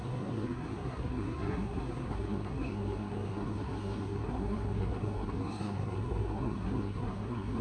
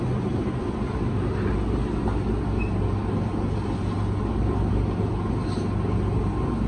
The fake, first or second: first